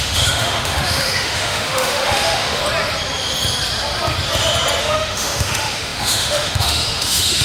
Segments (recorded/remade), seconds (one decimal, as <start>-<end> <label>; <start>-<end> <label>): 0.0-2.6 remade; 2.6-4.8 recorded; 4.8-7.4 remade